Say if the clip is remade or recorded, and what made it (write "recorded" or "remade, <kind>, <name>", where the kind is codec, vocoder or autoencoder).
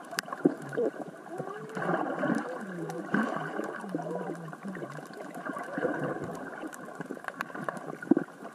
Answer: remade, vocoder, BigVGAN v2